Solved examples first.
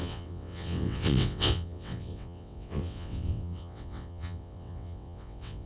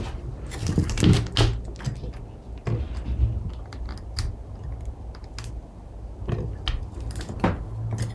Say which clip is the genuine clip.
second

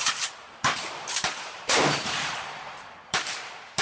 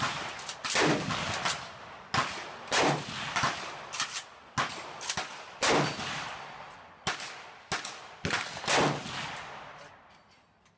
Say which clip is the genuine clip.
second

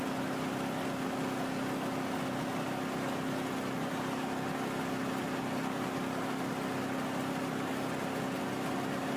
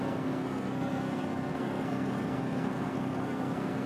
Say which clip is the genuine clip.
first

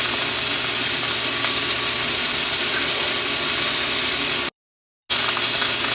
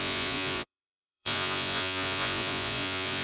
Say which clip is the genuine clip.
first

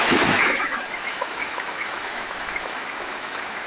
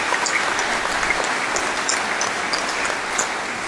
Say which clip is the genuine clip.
second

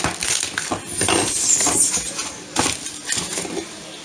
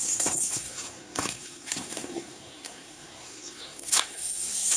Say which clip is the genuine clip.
first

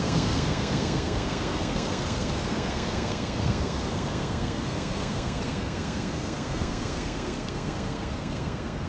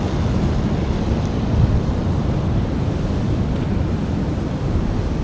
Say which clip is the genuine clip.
second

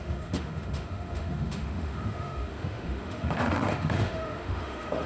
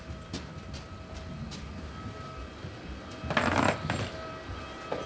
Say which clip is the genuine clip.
second